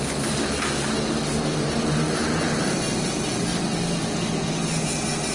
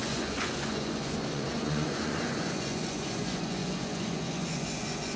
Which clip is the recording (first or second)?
first